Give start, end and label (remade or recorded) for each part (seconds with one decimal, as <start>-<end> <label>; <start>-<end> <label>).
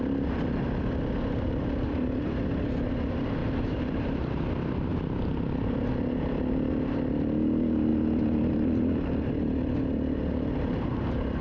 0.0-3.4 recorded; 3.4-4.4 remade; 4.4-11.4 recorded